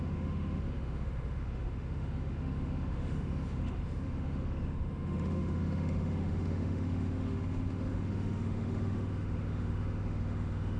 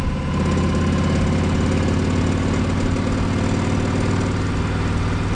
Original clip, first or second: second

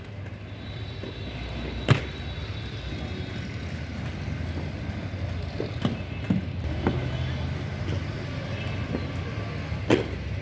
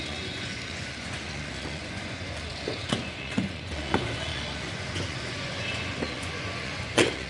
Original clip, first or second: first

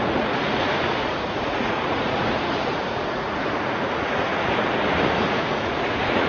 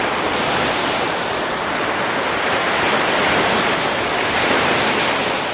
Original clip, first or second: second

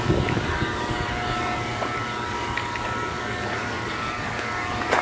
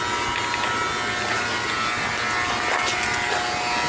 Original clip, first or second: second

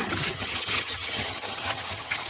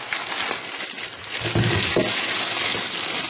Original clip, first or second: second